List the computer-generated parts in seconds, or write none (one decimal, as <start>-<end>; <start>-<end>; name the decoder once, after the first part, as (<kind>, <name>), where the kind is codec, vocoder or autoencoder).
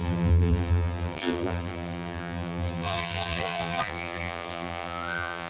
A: 0.0-5.5 (vocoder, BigVGAN v2)